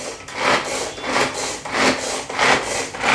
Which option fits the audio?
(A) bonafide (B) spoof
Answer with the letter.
A